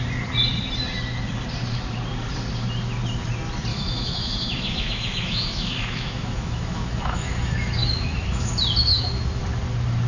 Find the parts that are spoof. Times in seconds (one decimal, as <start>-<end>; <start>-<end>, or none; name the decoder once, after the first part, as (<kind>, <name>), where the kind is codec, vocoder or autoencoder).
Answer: 3.7-8.5 (autoencoder, DAC-VAE); 8.9-9.4